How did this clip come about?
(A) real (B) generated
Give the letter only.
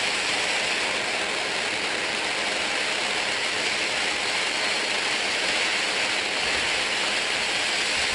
A